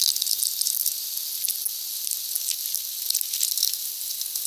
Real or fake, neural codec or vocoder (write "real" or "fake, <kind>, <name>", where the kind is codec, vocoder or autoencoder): real